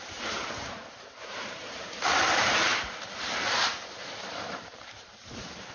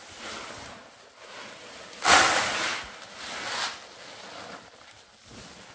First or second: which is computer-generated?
first